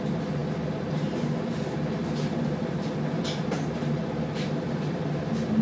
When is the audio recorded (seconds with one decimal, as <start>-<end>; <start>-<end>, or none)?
0.0-5.6